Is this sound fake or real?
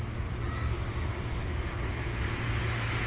real